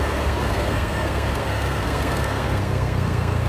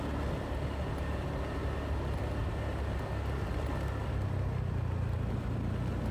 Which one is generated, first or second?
first